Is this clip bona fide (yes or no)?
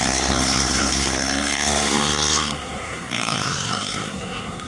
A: no